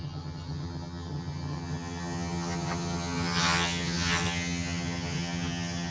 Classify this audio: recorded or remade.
remade